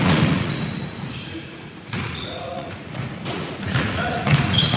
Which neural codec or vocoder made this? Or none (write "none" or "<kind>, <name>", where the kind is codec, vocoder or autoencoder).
vocoder, Vocos